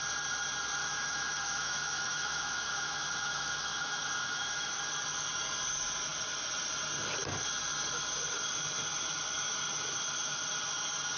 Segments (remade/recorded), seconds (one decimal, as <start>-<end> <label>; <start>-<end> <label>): 0.0-0.8 recorded; 0.8-4.8 remade; 4.8-11.2 recorded